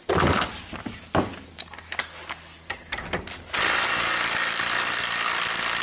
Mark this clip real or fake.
real